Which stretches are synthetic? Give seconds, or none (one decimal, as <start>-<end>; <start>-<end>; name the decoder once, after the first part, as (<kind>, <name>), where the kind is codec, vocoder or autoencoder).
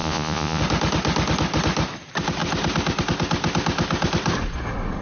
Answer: 0.0-0.6 (vocoder, Vocos)